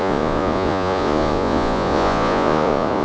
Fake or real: fake